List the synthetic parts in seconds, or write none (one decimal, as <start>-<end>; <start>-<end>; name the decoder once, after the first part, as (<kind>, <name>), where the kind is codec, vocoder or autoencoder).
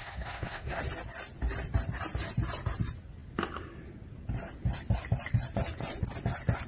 0.0-0.8 (codec, SNAC)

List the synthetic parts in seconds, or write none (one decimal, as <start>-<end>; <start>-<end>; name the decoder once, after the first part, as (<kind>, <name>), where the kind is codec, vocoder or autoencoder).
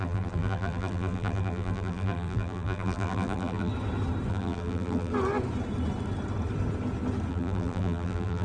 0.0-3.7 (vocoder, BigVGAN v2); 4.3-5.1; 7.3-8.4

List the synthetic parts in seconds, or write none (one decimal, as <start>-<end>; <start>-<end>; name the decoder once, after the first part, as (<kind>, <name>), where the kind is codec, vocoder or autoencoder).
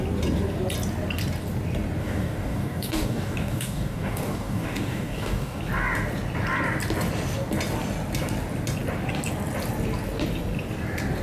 2.0-5.6 (codec, DAC)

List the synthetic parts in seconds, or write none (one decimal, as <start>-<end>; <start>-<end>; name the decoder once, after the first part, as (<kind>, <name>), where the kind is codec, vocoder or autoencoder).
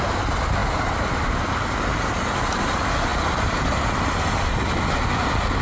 none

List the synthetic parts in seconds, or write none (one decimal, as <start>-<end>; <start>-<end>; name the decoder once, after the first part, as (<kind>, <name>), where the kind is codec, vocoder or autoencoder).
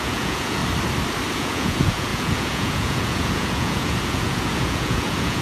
0.0-0.6 (vocoder, Vocos); 1.3-5.4